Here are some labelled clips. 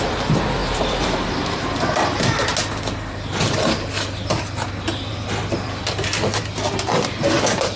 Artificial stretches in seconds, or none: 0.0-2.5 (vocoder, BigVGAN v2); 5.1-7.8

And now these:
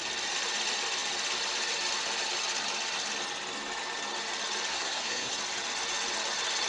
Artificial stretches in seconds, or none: 4.7-5.3 (codec, SNAC)

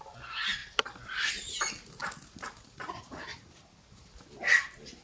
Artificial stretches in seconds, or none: none

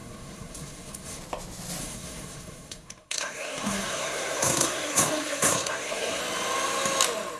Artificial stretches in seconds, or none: 0.0-1.2 (codec, SNAC); 1.8-6.2